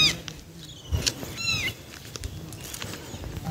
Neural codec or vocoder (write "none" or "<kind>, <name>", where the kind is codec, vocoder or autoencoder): none